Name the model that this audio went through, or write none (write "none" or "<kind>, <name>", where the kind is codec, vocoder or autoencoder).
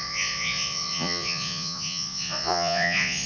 vocoder, Vocos